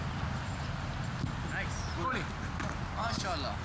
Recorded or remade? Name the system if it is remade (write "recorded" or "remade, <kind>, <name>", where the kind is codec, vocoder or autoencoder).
recorded